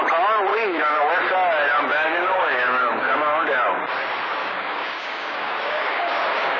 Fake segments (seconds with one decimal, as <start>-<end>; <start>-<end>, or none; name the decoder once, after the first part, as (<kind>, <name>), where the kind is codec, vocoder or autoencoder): 0.5-1.1 (codec, DAC); 1.9-3.8; 4.4-6.6

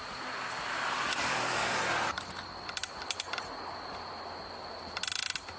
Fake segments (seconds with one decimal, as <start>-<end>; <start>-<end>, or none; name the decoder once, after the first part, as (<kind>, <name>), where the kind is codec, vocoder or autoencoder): 1.2-1.8 (codec, DAC)

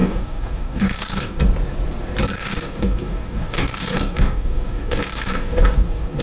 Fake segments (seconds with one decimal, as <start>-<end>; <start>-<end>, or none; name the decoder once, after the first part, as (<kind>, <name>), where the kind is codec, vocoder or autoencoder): 0.0-1.4 (codec, DAC); 2.3-6.2

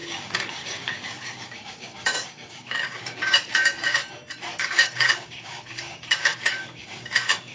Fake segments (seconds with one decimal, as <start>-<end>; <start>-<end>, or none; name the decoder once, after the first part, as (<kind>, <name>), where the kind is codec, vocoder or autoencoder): 0.0-4.0 (codec, DAC); 4.6-7.5

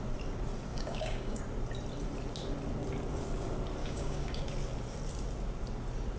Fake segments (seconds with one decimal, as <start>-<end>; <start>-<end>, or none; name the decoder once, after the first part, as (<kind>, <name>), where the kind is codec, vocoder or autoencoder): 0.7-1.4 (codec, DAC); 3.8-4.4

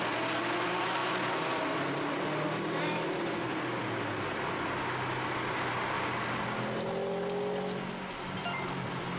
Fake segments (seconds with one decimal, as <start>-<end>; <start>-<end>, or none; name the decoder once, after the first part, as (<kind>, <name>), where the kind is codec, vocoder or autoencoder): none

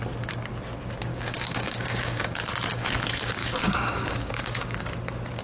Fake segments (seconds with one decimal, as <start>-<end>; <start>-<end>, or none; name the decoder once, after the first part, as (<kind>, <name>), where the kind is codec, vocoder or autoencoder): 1.1-2.4 (codec, DAC); 3.4-4.9

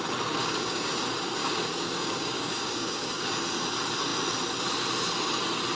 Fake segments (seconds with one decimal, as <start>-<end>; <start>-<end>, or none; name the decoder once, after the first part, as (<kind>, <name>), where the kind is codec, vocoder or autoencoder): 0.4-0.9 (codec, DAC); 1.4-3.3